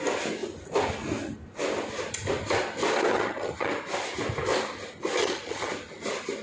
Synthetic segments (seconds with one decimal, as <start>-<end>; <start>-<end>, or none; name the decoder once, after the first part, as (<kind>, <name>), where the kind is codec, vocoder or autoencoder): 3.1-3.7 (vocoder, HiFi-GAN); 5.2-5.7